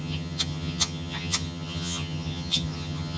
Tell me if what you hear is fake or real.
fake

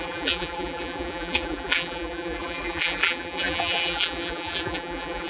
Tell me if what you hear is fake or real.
fake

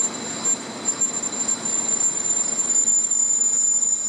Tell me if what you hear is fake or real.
real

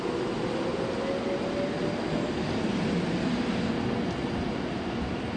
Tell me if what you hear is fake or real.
real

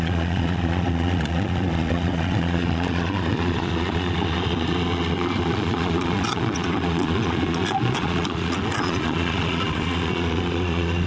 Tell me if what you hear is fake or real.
fake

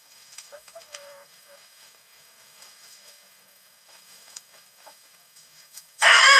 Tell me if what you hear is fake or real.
fake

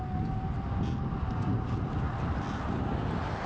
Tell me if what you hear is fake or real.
real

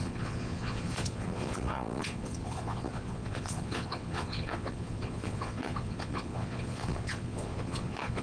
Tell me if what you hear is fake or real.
fake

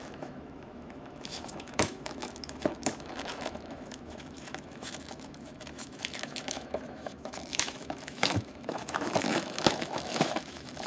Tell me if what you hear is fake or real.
fake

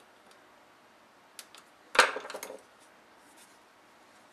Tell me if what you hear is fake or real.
real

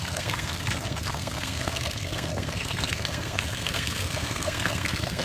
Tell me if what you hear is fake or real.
fake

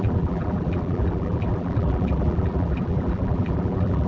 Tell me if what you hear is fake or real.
fake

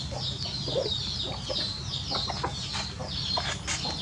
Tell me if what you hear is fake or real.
real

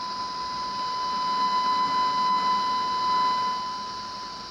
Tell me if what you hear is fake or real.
real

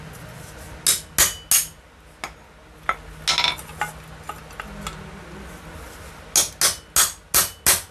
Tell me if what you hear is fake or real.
real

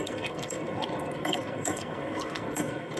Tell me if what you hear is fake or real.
fake